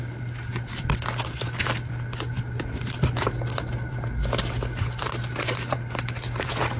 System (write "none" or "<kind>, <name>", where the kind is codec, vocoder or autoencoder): none